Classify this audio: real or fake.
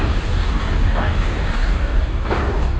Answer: fake